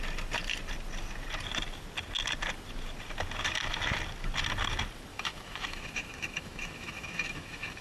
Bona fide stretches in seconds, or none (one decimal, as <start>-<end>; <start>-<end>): 0.0-5.1